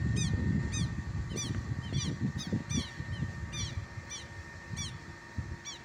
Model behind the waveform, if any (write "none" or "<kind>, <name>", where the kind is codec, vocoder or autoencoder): none